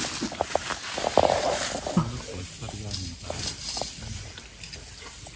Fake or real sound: real